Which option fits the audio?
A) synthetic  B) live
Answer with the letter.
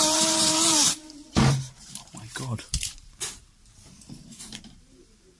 A